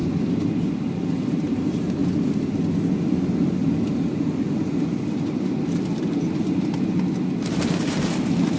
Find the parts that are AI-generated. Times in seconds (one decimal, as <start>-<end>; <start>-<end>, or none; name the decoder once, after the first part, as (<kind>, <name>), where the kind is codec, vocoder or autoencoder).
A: 0.0-0.6 (vocoder, BigVGAN v2); 3.6-6.2